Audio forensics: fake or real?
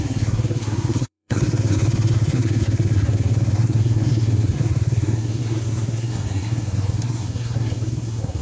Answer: fake